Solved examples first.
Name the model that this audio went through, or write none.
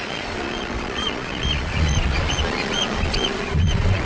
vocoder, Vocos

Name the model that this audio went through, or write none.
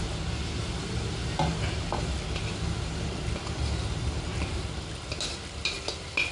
none